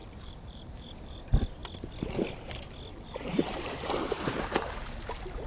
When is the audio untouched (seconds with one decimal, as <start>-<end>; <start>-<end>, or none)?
1.2-2.9; 4.7-5.5